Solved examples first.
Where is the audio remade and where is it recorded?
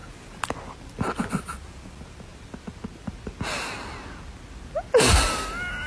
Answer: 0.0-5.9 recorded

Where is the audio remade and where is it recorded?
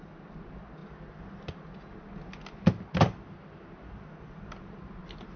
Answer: 0.0-5.4 recorded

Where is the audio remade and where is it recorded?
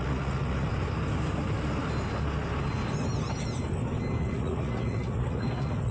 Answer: 0.0-0.7 remade; 0.7-4.2 recorded; 4.2-5.9 remade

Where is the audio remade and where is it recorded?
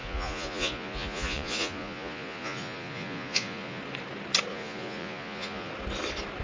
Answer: 0.0-3.8 remade; 3.8-4.5 recorded; 4.5-5.7 remade; 5.7-6.4 recorded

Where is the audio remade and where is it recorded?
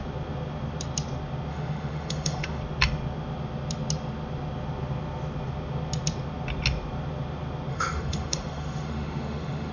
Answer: 0.0-1.5 recorded; 1.5-2.6 remade; 2.6-7.7 recorded; 7.7-9.7 remade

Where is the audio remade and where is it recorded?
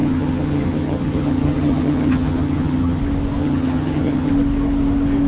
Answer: 0.0-3.0 remade; 3.0-3.4 recorded; 3.4-4.3 remade; 4.3-5.3 recorded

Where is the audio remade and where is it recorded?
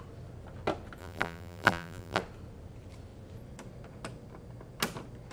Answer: 0.0-1.0 recorded; 1.0-2.2 remade; 2.2-5.3 recorded